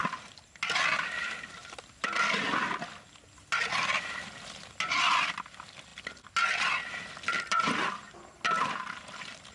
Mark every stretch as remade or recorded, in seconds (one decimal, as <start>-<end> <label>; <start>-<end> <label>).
0.0-9.5 recorded